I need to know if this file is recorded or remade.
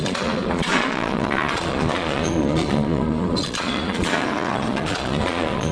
remade